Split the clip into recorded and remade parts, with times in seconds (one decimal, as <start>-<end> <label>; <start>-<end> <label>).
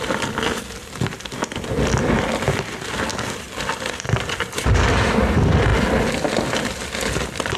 0.0-7.6 recorded